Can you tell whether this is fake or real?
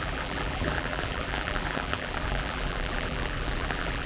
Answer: fake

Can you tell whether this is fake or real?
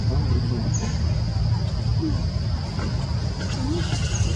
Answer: real